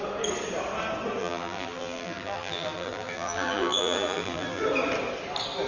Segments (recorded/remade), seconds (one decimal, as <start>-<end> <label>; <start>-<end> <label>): 0.0-1.2 recorded; 1.2-4.6 remade; 4.6-5.7 recorded